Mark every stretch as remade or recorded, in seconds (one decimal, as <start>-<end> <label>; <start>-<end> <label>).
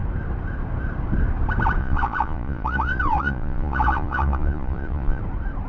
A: 0.0-1.8 recorded; 1.8-5.2 remade; 5.2-5.7 recorded